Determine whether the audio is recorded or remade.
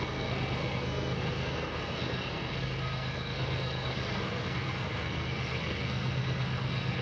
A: remade